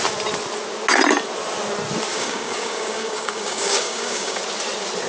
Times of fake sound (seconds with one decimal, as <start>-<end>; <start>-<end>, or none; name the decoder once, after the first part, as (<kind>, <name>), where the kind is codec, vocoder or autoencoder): 2.1-4.4 (codec, DAC)